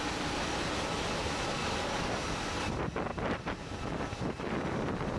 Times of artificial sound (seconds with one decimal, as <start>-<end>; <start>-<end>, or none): none